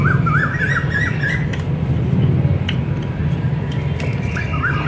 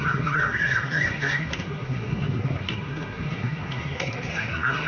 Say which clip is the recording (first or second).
first